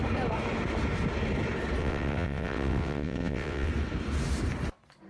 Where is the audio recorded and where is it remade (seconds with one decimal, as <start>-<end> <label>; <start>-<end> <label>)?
0.0-1.8 recorded; 1.8-3.7 remade; 3.7-5.1 recorded